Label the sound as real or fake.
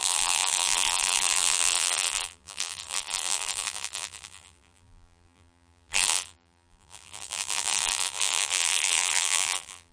fake